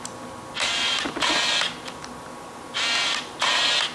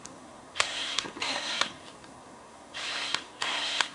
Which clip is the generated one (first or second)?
second